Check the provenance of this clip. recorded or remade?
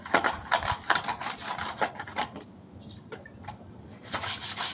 recorded